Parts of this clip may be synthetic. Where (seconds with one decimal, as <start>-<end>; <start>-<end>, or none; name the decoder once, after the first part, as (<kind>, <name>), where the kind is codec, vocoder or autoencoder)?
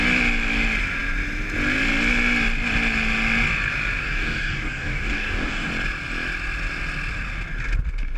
4.0-5.7 (codec, DAC)